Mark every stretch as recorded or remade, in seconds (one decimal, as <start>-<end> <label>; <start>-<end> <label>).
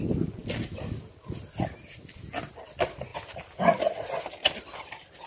0.0-5.3 recorded